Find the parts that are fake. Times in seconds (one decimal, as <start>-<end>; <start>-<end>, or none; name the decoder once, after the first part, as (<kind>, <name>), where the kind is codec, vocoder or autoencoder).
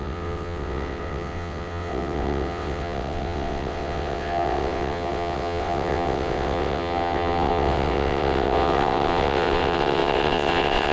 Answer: 0.0-10.9 (vocoder, WaveNeXt)